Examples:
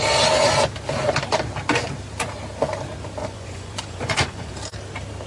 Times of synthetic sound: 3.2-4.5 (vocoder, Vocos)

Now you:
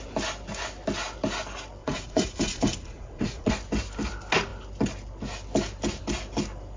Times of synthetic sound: 1.8-3.5 (vocoder, Vocos)

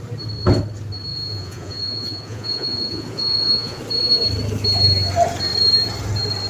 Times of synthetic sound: 1.1-3.8 (vocoder, Vocos)

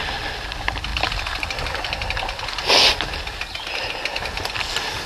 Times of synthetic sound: none

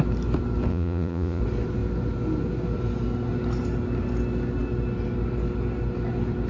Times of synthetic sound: 0.7-1.4 (vocoder, Vocos)

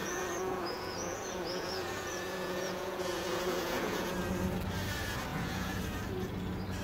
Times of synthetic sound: 0.0-4.1 (vocoder, Vocos); 5.3-5.8

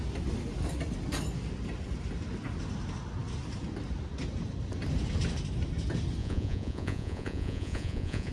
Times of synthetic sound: 6.2-8.3 (vocoder, Vocos)

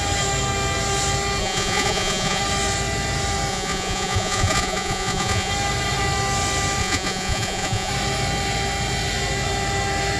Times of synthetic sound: 1.4-2.4 (vocoder, Vocos); 3.5-5.5; 6.8-7.9